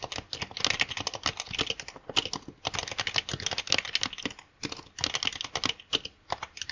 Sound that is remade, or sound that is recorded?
recorded